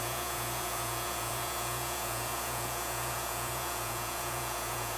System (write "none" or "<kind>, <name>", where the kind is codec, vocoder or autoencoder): vocoder, Vocos